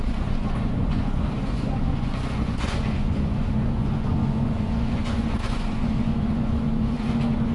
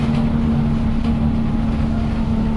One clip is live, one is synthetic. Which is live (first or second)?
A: second